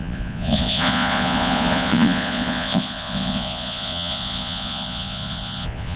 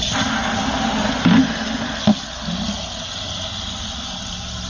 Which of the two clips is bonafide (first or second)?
second